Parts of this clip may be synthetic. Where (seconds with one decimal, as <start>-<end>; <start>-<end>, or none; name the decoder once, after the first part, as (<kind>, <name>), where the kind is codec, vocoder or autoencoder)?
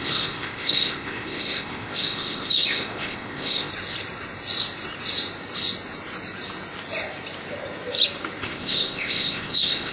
0.0-3.7 (codec, ZipCodec); 8.4-9.9